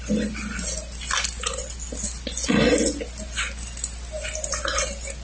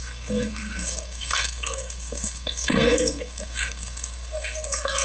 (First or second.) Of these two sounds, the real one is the first